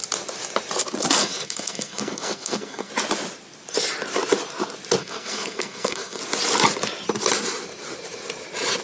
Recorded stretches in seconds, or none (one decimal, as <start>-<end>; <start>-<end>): 0.0-1.2; 2.9-5.0; 6.2-8.8